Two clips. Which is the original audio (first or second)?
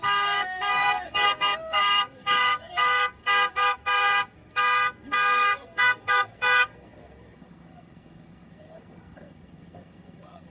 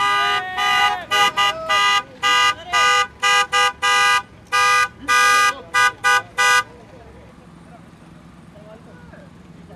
second